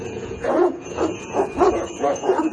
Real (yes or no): no